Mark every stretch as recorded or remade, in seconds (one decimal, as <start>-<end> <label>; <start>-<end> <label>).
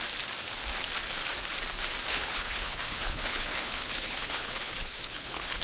0.0-2.1 recorded; 2.1-5.6 remade